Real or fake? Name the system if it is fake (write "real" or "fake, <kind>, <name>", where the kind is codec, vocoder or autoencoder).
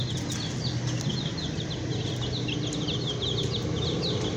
real